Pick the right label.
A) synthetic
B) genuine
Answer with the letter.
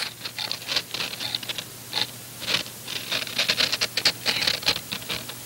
B